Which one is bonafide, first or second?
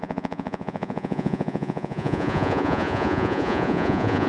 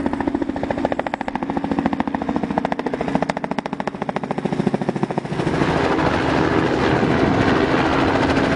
second